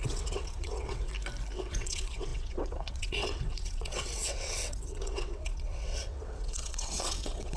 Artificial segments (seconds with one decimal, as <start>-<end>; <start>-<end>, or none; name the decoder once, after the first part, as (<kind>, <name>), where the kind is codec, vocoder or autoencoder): 0.0-1.1 (vocoder, WaveNeXt); 1.7-7.6